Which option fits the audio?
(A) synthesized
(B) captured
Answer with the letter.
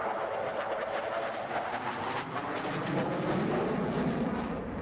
B